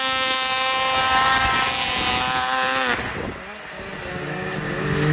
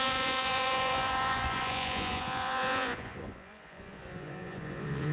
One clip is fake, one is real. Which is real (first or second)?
first